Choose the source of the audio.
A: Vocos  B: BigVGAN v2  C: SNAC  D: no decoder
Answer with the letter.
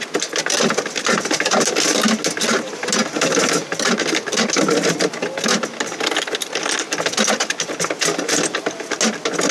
D